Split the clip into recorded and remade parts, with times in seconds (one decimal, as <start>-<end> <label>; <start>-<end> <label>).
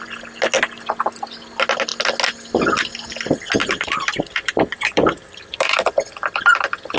0.0-3.6 recorded; 3.6-5.9 remade; 5.9-7.0 recorded